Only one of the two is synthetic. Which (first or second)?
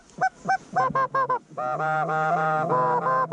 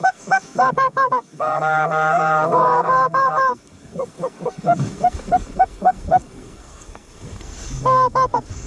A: second